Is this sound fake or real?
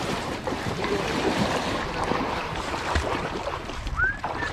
fake